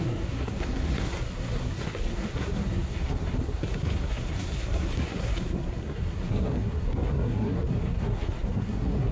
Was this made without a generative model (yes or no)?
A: no